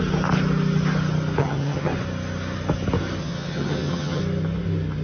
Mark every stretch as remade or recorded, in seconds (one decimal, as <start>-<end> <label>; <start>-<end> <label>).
0.0-1.4 recorded; 1.4-1.9 remade; 1.9-3.2 recorded; 3.2-4.2 remade; 4.2-5.0 recorded

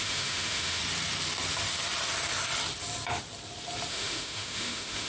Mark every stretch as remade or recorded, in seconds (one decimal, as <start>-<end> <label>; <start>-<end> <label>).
0.0-0.8 remade; 0.8-3.9 recorded; 3.9-5.1 remade